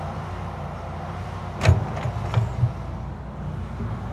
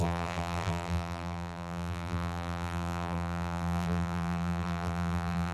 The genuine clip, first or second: first